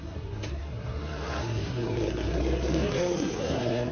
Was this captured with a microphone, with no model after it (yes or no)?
no